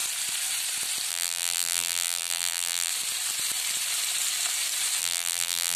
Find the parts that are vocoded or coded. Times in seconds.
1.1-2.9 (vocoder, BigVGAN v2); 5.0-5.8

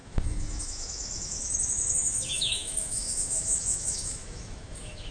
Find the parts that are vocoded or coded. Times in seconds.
0.0-5.1 (autoencoder, DAC-VAE)

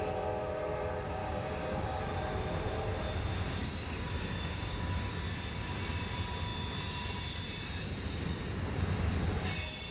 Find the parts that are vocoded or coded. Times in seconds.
1.2-2.0 (codec, DAC); 3.6-5.1

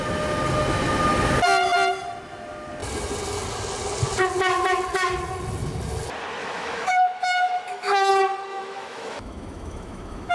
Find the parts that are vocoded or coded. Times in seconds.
6.4-8.1 (autoencoder, DAC-VAE); 8.5-10.3

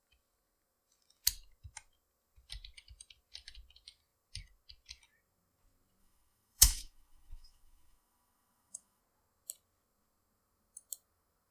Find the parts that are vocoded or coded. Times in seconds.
6.0-9.0 (autoencoder, DAC-VAE)